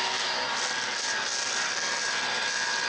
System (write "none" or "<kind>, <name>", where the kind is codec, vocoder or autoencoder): none